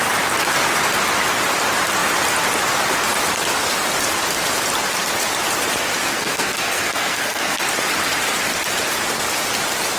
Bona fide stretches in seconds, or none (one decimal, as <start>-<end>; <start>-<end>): 0.0-6.1; 7.6-10.0